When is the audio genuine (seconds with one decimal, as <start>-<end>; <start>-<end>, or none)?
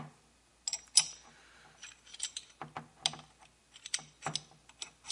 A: 0.0-5.1